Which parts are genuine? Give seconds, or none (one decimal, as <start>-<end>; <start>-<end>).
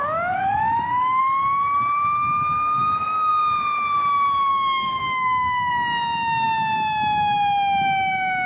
1.2-4.5; 5.7-8.5